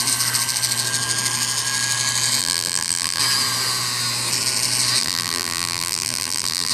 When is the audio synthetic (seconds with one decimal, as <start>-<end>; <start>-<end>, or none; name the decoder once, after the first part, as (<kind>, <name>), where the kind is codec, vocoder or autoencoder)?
2.4-3.2 (vocoder, BigVGAN v2); 5.0-6.7